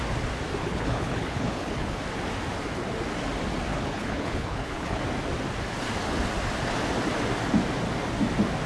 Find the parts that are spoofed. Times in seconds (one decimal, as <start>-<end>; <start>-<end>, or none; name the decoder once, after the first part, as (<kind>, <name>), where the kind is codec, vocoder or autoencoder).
0.6-2.0 (codec, HILCodec); 3.7-5.0